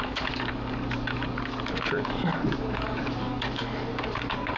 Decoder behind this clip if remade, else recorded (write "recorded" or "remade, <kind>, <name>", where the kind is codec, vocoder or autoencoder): remade, codec, DAC